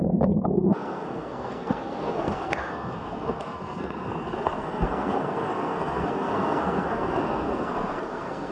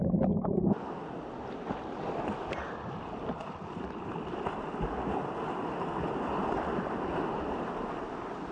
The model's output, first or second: first